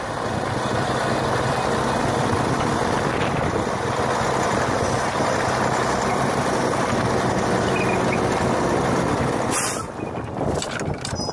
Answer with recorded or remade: recorded